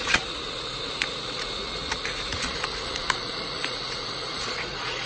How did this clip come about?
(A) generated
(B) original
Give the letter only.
A